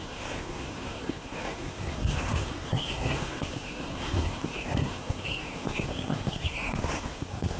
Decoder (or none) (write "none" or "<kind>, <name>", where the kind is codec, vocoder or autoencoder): codec, SNAC